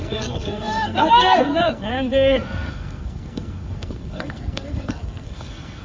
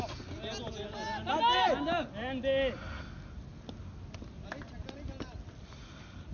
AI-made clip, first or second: first